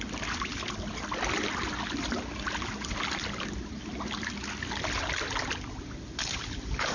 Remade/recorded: recorded